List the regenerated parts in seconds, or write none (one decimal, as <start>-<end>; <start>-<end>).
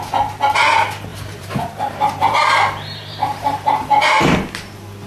1.1-4.2